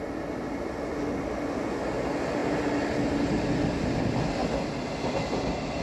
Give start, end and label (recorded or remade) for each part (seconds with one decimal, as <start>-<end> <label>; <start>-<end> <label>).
0.0-5.8 recorded